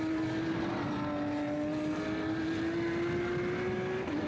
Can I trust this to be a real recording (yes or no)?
yes